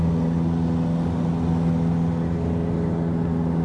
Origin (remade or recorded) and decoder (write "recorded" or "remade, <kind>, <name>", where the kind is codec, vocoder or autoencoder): recorded